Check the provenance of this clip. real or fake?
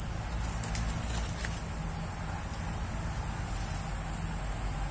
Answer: real